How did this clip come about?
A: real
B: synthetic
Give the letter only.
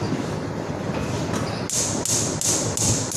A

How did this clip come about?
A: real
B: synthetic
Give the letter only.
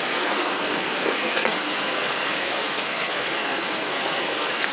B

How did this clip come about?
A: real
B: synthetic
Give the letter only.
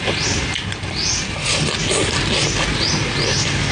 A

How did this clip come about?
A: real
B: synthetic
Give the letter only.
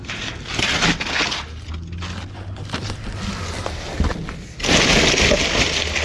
A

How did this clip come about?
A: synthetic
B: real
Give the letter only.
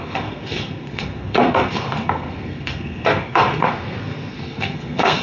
A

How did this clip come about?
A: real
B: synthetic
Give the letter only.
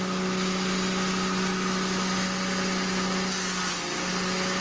A